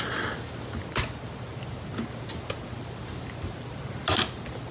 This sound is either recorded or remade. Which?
recorded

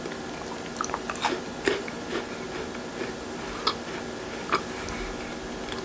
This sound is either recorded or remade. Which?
recorded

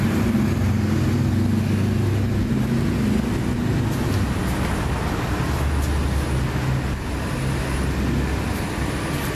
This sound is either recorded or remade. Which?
recorded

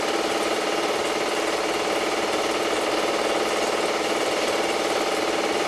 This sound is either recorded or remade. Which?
recorded